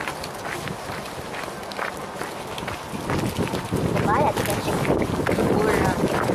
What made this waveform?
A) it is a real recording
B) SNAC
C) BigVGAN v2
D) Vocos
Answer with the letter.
A